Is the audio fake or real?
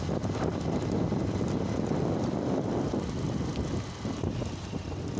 real